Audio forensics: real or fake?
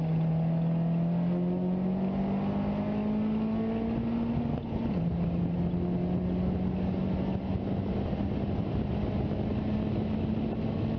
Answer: real